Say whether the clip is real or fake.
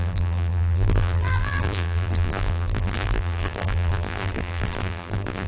fake